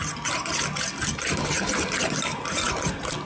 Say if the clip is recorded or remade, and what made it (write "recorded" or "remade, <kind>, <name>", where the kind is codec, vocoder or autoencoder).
recorded